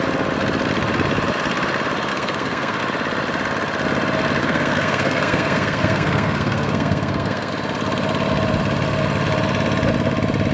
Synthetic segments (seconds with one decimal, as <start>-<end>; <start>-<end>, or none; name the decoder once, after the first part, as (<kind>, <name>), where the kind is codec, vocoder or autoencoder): 2.1-2.8 (codec, SNAC); 4.4-7.5